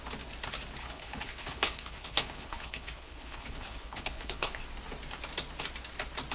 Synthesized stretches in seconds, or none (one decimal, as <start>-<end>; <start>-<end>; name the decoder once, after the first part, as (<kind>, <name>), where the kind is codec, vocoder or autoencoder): 0.8-4.6 (codec, HILCodec)